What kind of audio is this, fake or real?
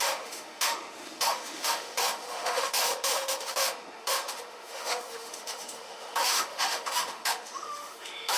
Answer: fake